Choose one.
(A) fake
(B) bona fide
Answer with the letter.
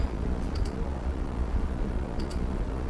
A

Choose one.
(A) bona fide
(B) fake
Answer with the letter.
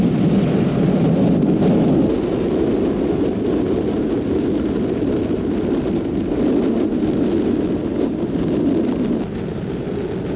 A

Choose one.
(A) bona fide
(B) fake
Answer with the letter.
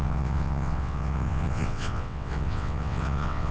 B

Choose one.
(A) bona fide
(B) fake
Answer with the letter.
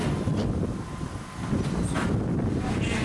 A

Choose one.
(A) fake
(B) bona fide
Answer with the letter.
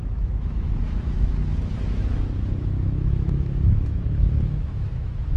A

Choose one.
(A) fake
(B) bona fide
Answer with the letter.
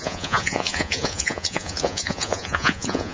A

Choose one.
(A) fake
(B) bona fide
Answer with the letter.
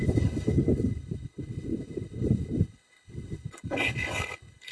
A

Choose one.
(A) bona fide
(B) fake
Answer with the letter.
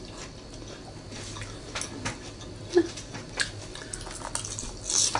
A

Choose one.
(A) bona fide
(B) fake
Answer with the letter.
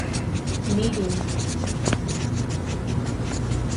A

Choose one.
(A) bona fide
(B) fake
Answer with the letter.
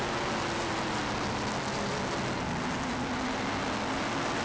A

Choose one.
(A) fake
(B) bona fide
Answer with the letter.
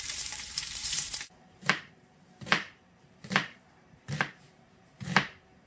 A